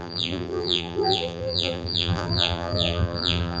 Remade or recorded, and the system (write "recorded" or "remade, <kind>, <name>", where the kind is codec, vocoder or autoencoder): remade, vocoder, BigVGAN v2